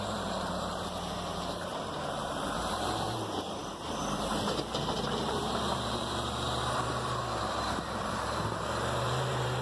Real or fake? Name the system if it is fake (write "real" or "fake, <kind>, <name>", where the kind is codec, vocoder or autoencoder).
fake, vocoder, BigVGAN v2